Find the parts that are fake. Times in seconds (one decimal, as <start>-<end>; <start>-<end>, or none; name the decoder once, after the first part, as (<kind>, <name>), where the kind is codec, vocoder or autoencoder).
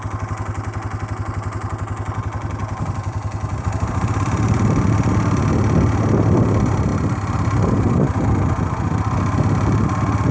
2.6-5.5 (vocoder, BigVGAN v2)